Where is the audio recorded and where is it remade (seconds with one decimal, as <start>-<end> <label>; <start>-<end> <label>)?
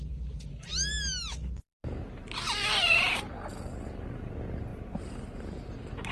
0.0-0.7 remade; 0.7-1.6 recorded; 1.6-3.3 remade; 3.3-3.8 recorded; 3.8-6.1 remade